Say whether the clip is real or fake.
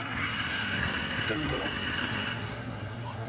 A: fake